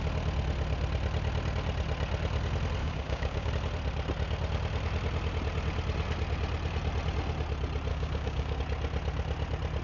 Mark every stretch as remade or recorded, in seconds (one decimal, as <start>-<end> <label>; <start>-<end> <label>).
0.0-2.8 recorded; 2.8-3.5 remade; 3.5-7.9 recorded; 7.9-8.6 remade; 8.6-9.8 recorded